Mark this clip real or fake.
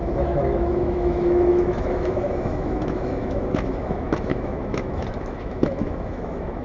fake